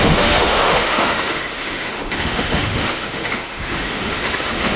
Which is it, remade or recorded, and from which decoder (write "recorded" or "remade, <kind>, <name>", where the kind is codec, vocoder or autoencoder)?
remade, autoencoder, DAC-VAE